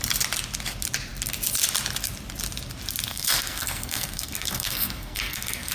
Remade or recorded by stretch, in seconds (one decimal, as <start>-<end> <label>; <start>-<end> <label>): 0.0-3.1 recorded; 3.1-5.7 remade